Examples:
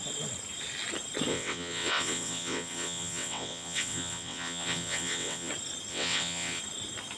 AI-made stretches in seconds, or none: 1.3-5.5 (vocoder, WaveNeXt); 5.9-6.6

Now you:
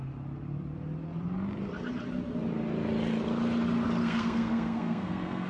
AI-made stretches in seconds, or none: 4.0-5.5 (codec, SNAC)

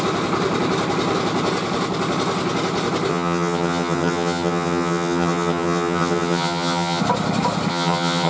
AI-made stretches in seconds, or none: 3.1-7.0 (vocoder, HiFi-GAN); 7.7-8.3

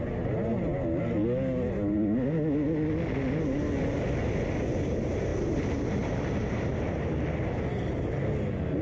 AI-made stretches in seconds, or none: 5.3-7.1 (vocoder, BigVGAN v2)

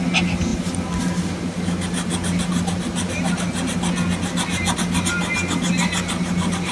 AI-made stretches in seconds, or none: none

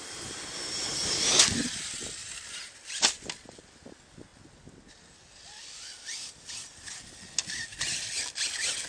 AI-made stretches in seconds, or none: none

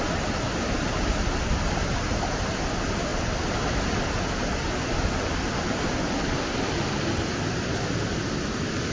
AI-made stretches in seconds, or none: none

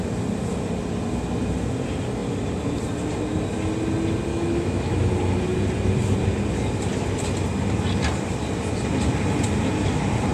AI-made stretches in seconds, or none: 4.3-5.1 (autoencoder, DAC-VAE)